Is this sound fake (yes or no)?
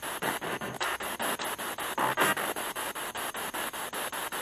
no